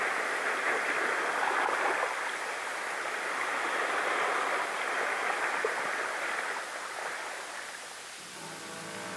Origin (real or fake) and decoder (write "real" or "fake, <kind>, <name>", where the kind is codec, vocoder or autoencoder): real